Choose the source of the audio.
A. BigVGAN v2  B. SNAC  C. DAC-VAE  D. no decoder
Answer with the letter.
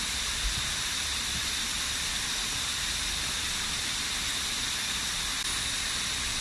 D